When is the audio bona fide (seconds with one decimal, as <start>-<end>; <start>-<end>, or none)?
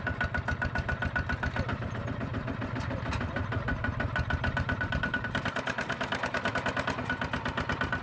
0.0-1.7; 6.5-8.0